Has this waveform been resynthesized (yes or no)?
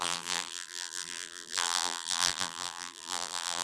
yes